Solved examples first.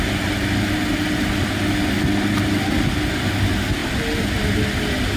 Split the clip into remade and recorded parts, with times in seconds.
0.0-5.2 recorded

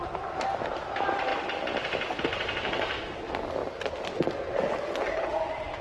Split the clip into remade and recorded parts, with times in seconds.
0.0-1.3 recorded; 1.3-2.2 remade; 2.2-5.8 recorded

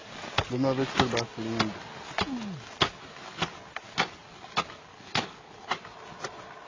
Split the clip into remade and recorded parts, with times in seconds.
0.0-4.9 recorded; 4.9-5.7 remade; 5.7-6.7 recorded